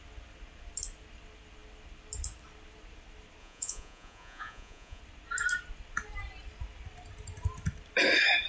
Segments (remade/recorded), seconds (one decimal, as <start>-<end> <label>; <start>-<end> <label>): 0.0-3.4 recorded; 3.4-5.0 remade; 5.0-8.5 recorded